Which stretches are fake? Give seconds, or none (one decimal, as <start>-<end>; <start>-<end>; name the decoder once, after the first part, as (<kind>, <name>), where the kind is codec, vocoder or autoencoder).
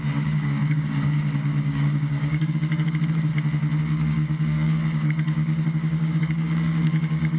0.0-3.3 (codec, DAC); 3.8-7.4